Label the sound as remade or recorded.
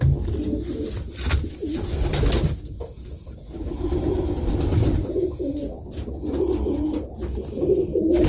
recorded